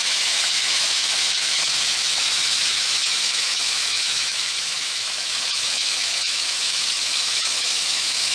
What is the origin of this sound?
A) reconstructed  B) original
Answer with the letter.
A